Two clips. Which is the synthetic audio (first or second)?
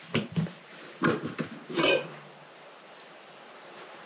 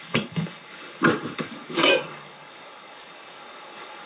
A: second